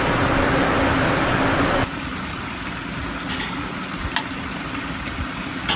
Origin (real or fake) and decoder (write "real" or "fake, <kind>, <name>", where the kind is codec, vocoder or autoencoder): real